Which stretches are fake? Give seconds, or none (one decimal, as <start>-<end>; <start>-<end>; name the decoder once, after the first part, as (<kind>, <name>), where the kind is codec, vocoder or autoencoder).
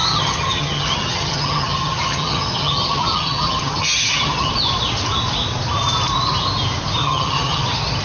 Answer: 0.0-4.5 (vocoder, HiFi-GAN); 7.0-7.6